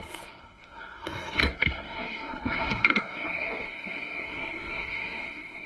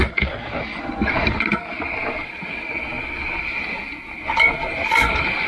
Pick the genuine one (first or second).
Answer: second